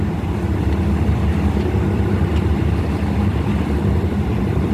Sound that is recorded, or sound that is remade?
remade